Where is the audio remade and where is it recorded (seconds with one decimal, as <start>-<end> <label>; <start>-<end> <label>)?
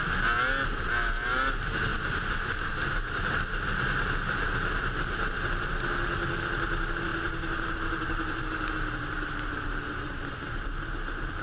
0.0-7.1 recorded; 7.1-8.4 remade; 8.4-9.5 recorded; 9.5-10.5 remade; 10.5-11.4 recorded